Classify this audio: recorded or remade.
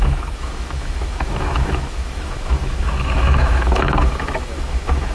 remade